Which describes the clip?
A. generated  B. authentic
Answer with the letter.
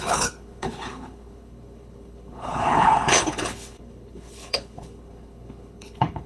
A